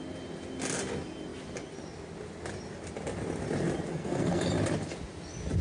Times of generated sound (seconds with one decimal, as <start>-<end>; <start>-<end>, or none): 3.9-4.5